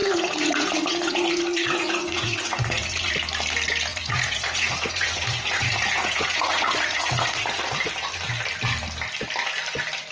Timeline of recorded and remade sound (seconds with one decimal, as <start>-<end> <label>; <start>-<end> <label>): 0.0-3.1 remade; 3.1-3.9 recorded; 3.9-7.6 remade; 7.6-10.1 recorded